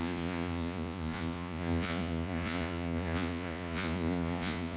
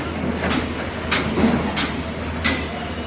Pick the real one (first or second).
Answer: second